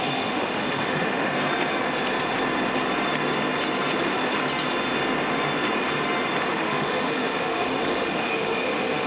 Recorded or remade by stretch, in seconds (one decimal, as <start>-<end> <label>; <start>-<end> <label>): 0.0-1.3 remade; 1.3-4.0 recorded; 4.0-4.4 remade; 4.4-6.5 recorded; 6.5-9.1 remade